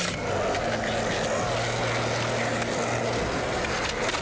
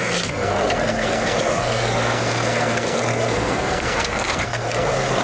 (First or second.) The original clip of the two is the first